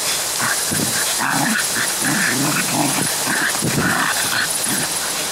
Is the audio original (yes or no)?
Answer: yes